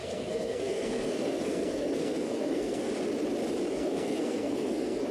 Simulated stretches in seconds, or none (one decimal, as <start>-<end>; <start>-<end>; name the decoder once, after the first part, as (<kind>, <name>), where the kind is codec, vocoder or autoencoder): 0.0-2.9 (codec, SNAC); 3.7-5.1